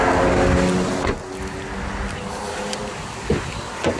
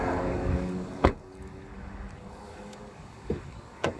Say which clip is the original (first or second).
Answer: first